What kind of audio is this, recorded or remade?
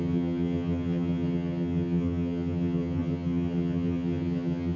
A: remade